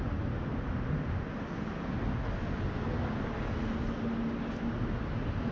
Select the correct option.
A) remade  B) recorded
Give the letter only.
B